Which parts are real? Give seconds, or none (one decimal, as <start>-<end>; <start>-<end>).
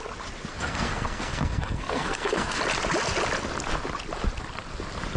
0.0-0.5; 2.6-5.2